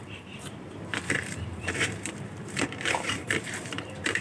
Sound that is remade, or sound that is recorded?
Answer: remade